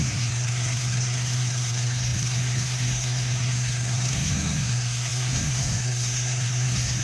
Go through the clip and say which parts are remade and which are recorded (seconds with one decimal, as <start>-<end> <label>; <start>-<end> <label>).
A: 0.0-7.0 remade